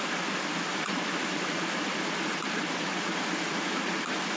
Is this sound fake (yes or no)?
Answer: no